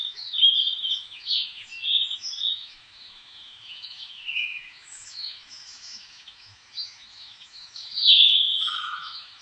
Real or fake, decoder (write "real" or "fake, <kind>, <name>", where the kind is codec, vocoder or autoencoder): fake, autoencoder, DAC-VAE